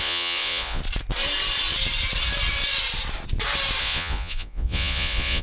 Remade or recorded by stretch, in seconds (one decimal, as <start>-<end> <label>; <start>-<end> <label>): 0.0-0.8 remade; 0.8-3.8 recorded; 3.8-5.4 remade